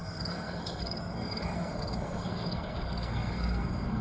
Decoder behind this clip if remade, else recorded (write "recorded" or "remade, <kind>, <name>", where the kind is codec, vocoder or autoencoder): remade, codec, SNAC